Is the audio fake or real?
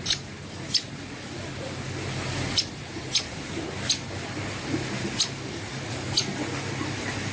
real